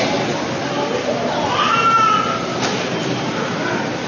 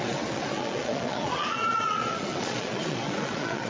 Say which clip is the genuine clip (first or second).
first